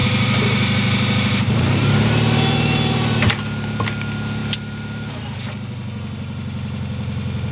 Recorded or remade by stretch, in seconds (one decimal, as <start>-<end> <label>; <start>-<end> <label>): 0.0-3.4 remade; 3.4-4.4 recorded; 4.4-5.1 remade; 5.1-7.5 recorded

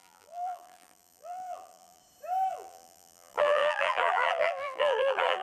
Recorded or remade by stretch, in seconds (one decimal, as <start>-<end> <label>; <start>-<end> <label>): 0.0-2.0 remade; 2.0-2.5 recorded; 2.5-5.4 remade

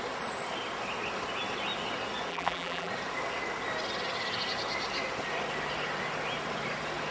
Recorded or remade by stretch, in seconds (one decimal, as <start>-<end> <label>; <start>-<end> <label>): 0.0-2.3 recorded; 2.3-2.9 remade; 2.9-7.1 recorded

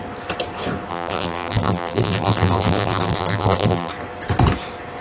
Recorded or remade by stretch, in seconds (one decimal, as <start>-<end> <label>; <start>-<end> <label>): 0.0-0.9 recorded; 0.9-3.9 remade; 3.9-5.0 recorded

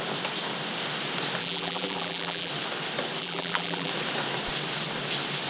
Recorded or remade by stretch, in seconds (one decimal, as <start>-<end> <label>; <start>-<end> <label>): 0.0-1.4 recorded; 1.4-2.5 remade; 2.5-3.2 recorded; 3.2-3.9 remade; 3.9-5.5 recorded